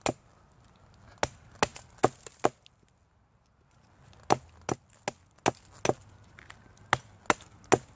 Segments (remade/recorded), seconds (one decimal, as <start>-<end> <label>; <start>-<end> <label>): 0.0-8.0 recorded